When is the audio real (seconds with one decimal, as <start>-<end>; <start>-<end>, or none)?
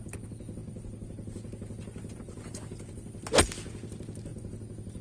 0.0-5.0